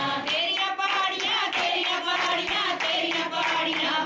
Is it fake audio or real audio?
real